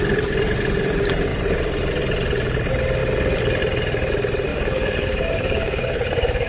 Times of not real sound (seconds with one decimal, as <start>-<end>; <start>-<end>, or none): 4.5-6.5